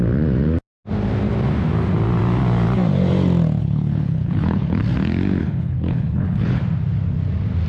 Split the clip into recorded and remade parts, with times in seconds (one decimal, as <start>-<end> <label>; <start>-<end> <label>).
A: 0.0-3.6 recorded; 3.6-4.8 remade; 4.8-5.4 recorded; 5.4-6.6 remade; 6.6-7.7 recorded

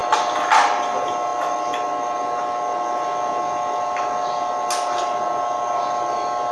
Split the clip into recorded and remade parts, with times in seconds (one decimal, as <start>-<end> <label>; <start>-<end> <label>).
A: 0.0-6.5 recorded

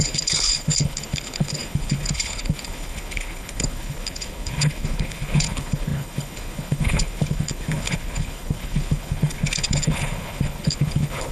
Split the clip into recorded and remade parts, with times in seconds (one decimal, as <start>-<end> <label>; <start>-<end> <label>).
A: 0.0-11.3 remade

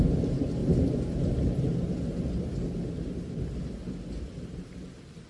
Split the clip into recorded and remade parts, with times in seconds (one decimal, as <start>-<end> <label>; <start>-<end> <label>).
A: 0.0-5.3 recorded

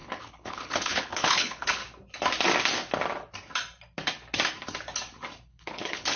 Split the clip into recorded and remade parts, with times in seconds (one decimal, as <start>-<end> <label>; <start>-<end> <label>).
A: 0.0-1.8 remade; 1.8-5.5 recorded; 5.5-6.2 remade

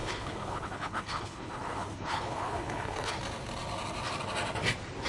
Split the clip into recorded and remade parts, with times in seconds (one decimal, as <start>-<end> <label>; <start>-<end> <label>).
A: 0.0-3.1 remade; 3.1-5.1 recorded

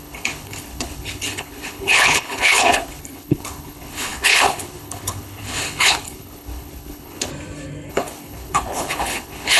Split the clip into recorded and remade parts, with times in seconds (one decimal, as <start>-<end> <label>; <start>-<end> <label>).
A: 0.0-7.3 remade; 7.3-7.9 recorded; 7.9-9.6 remade

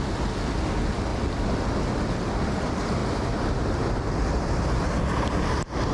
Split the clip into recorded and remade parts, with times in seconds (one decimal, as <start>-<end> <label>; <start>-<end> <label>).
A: 0.0-5.9 recorded